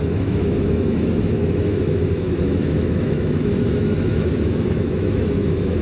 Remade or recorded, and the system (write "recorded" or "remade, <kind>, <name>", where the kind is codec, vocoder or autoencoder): remade, autoencoder, DAC-VAE